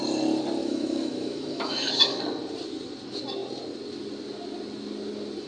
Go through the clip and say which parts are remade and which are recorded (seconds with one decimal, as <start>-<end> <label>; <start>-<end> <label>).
0.0-0.6 recorded; 0.6-2.2 remade; 2.2-5.5 recorded